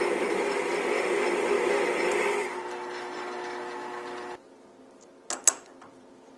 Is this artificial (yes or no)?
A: no